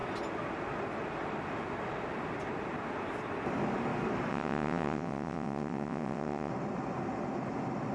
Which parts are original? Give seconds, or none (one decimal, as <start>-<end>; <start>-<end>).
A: 0.0-4.3; 6.5-7.9